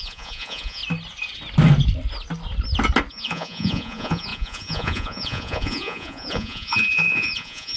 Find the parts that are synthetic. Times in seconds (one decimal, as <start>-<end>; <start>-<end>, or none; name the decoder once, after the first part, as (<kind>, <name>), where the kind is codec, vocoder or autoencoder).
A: 0.0-0.8 (vocoder, Vocos); 3.1-7.8